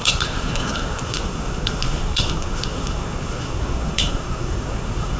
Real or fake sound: fake